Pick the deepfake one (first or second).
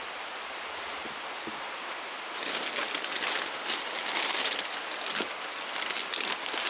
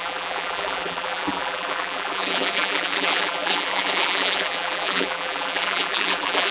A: second